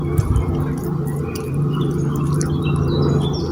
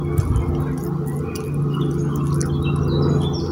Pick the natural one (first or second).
second